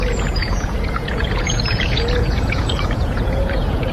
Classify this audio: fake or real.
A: fake